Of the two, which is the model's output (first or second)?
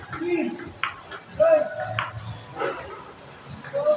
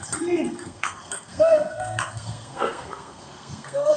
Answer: second